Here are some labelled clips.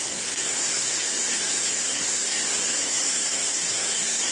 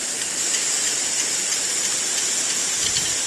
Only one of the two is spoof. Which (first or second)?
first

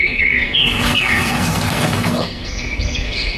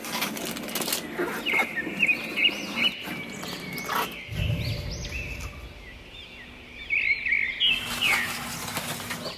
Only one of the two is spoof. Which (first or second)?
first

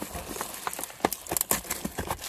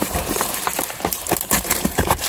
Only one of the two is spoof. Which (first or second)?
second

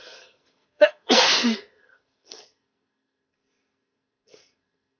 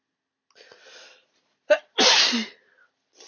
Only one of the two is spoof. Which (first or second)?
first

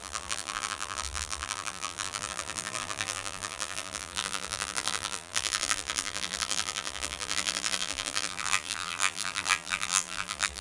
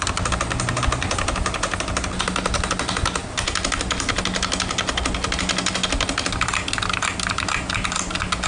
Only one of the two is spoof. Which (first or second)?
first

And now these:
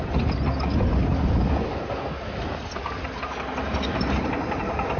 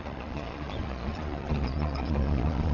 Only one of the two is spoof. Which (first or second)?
second